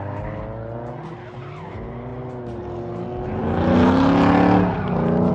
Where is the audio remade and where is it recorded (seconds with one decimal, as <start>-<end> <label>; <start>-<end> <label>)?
0.0-5.3 recorded